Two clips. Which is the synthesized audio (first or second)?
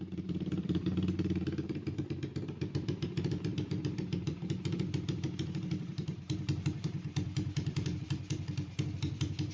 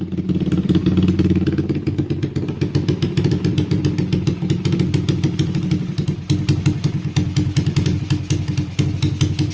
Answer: first